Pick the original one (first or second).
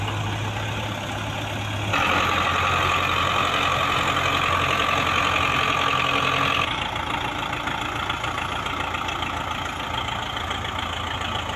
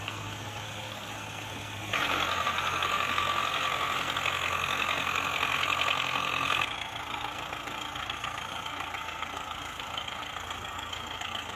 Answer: first